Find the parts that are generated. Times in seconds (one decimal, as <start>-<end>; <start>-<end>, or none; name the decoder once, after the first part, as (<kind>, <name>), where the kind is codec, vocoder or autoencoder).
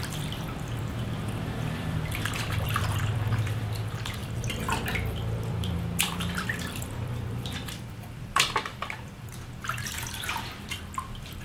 0.0-11.4 (vocoder, BigVGAN v2)